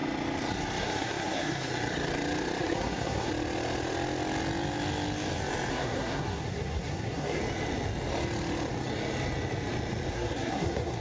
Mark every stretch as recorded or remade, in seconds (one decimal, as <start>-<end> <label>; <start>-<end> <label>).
0.0-0.8 recorded; 0.8-1.7 remade; 1.7-2.6 recorded; 2.6-3.3 remade; 3.3-5.7 recorded; 5.7-7.4 remade; 7.4-10.1 recorded; 10.1-11.0 remade